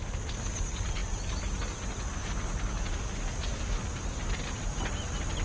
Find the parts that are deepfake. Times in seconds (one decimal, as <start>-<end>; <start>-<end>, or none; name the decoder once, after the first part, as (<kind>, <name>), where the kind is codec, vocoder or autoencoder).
none